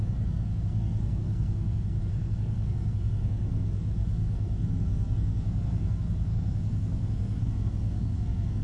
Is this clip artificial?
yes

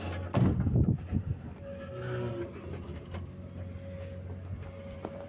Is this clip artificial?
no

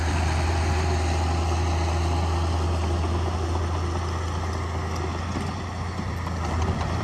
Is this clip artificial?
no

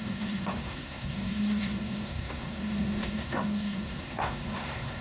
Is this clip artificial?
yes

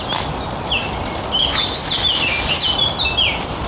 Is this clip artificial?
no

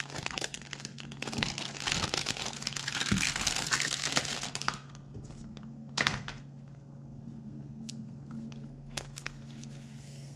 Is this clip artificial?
yes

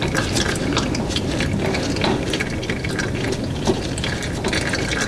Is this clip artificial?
no